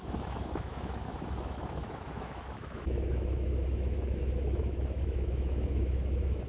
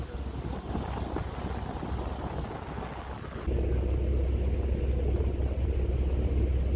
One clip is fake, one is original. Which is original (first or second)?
second